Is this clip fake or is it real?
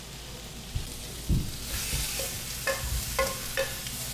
real